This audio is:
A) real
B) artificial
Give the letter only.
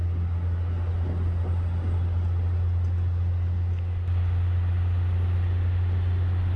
A